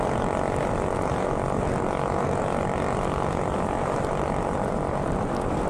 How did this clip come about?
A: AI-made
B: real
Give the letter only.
B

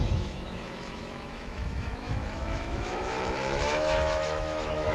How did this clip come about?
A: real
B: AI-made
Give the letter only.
B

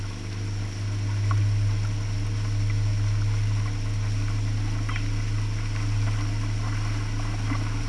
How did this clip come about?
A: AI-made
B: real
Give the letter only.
B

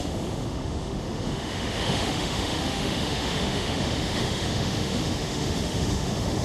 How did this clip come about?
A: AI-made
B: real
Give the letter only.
A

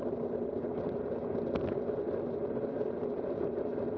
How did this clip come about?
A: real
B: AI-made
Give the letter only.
A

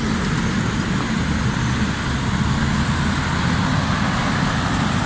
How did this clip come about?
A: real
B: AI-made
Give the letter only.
A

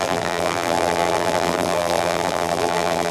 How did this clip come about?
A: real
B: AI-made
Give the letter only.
B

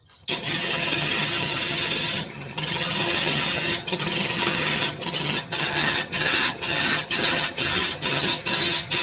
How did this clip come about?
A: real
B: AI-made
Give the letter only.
B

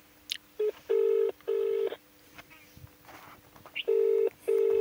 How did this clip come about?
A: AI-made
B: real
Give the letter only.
B